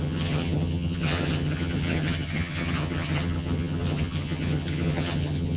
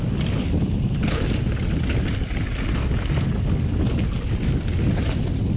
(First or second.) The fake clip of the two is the first